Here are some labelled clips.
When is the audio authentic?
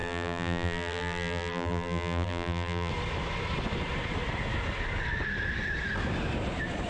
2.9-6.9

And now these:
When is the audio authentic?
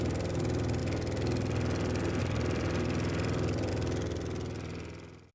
0.8-2.2; 3.7-5.3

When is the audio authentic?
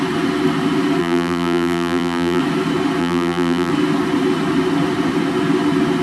0.0-1.0; 2.4-3.0; 3.7-6.0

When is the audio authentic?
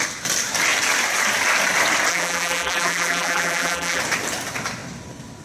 0.0-2.1; 4.0-5.4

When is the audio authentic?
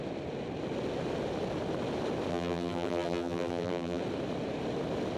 0.0-2.3; 4.0-5.2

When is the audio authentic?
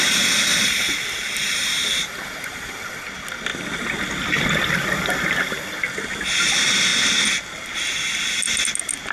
0.0-0.5; 2.8-9.1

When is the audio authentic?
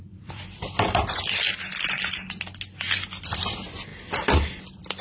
1.4-3.2